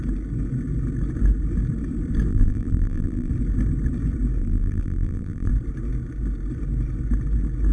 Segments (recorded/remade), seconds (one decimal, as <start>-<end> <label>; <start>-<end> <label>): 0.0-2.3 recorded; 2.3-3.3 remade; 3.3-4.4 recorded; 4.4-5.5 remade; 5.5-7.7 recorded